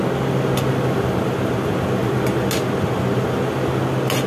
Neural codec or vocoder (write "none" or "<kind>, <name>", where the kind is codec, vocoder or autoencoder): none